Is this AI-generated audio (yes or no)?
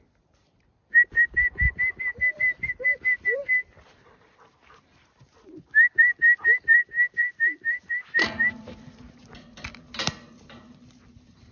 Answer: yes